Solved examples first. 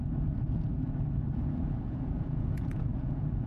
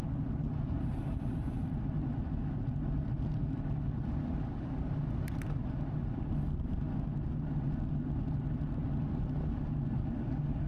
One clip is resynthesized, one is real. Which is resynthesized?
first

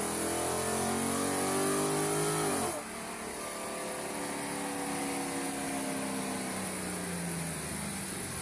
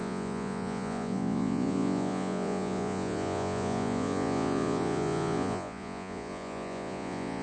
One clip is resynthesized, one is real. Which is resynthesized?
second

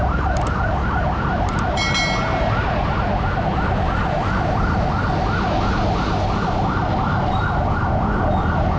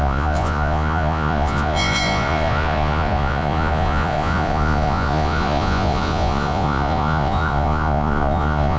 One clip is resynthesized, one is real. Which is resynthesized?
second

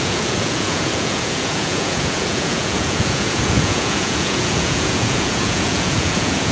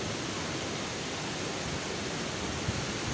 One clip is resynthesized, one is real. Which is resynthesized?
first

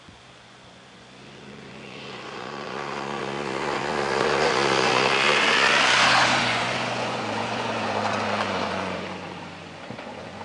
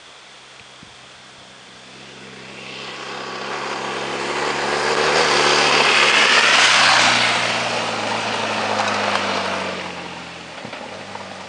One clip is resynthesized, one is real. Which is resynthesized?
first